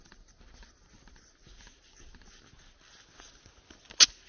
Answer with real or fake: real